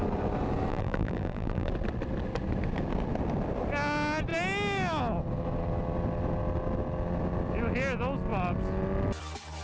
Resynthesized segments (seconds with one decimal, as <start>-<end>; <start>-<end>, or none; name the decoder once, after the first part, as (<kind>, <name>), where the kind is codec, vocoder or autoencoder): 0.7-1.7 (vocoder, BigVGAN v2)